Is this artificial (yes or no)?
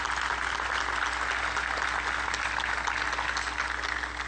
no